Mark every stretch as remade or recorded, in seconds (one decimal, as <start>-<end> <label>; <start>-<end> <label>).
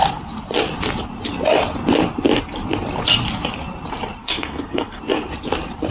0.0-4.2 recorded; 4.2-5.0 remade; 5.0-5.9 recorded